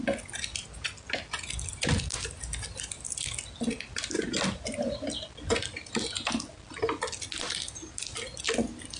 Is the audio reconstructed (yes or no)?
no